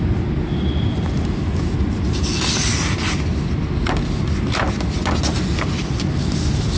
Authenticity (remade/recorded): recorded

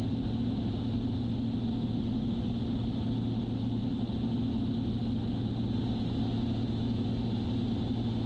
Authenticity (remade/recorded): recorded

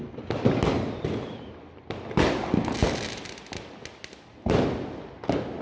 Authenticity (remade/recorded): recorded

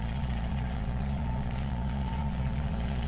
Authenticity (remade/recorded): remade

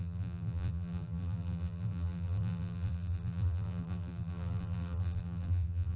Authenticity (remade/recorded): remade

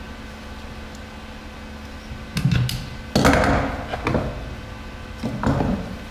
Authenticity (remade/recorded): recorded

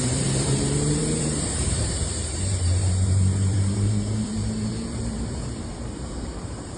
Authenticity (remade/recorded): remade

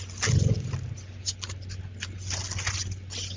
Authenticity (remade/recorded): recorded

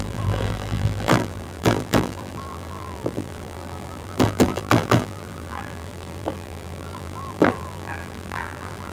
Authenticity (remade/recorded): remade